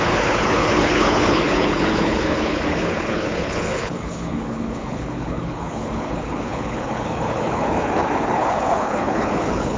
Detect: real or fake fake